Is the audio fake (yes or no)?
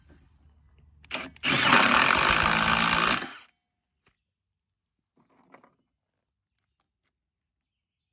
no